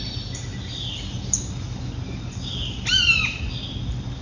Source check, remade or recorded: recorded